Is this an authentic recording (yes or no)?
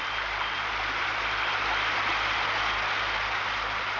yes